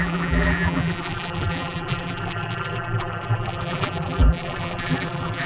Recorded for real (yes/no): no